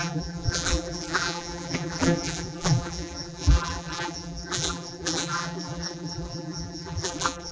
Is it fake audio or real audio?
fake